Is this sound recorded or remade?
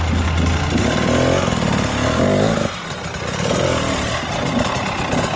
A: recorded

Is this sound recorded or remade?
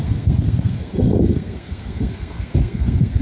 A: remade